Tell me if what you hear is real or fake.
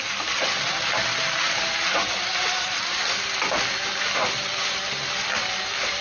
real